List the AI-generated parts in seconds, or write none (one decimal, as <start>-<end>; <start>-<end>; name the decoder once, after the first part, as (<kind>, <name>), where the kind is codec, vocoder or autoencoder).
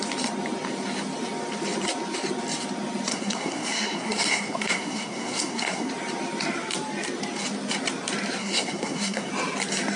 3.1-5.9 (codec, SNAC); 8.4-9.3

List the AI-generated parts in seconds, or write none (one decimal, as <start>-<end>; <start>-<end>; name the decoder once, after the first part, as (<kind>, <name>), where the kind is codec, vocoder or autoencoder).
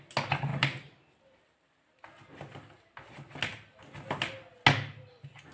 none